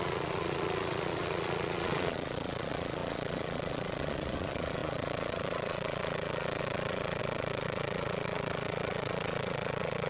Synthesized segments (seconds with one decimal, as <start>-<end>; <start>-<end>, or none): 0.0-10.1

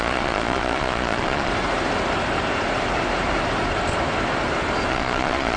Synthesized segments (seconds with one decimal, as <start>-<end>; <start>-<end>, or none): 0.0-1.5; 4.9-5.6